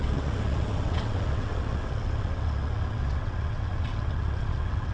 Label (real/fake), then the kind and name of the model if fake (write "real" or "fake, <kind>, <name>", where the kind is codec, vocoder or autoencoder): fake, vocoder, WaveNeXt